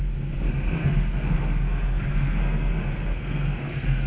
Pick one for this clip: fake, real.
fake